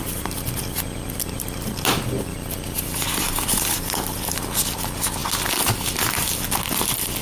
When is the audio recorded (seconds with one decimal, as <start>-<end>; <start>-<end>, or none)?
0.0-7.2